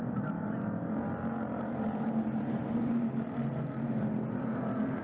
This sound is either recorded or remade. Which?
remade